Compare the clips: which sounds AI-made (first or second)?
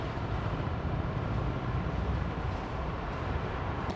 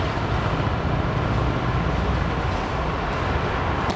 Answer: first